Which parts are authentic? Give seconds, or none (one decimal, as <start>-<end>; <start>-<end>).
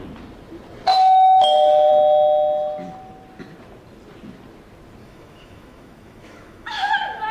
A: 0.0-0.9; 1.9-5.0